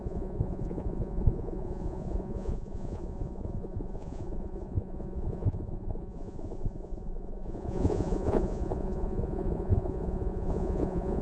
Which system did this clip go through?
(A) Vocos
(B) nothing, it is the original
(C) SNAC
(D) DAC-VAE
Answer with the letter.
A